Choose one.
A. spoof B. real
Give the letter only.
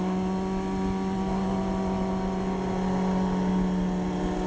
B